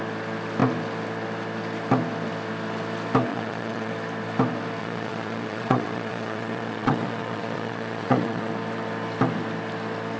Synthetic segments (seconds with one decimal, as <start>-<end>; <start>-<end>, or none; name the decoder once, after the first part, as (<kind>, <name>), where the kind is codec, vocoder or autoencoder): 3.3-3.9 (vocoder, Vocos); 4.8-8.5